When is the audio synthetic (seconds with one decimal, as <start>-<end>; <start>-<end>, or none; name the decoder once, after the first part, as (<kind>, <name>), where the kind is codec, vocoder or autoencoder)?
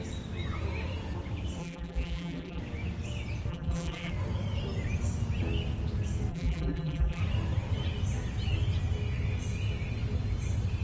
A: 1.6-2.6 (vocoder, BigVGAN v2); 3.5-4.1; 6.3-7.2